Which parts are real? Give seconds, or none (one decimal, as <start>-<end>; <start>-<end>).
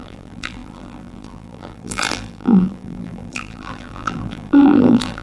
none